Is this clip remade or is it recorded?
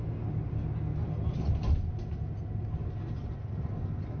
recorded